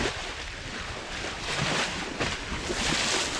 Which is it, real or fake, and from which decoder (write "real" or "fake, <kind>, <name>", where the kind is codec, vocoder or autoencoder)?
real